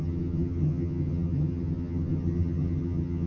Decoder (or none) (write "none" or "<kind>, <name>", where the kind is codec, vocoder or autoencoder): vocoder, HiFi-GAN